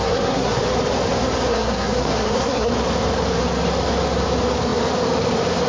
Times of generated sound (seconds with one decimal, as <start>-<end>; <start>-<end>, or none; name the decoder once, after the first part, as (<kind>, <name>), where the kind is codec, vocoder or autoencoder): 0.0-0.6 (codec, SNAC); 1.5-2.7